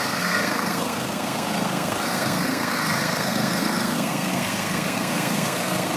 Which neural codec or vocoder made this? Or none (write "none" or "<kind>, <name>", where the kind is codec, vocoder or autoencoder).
codec, SNAC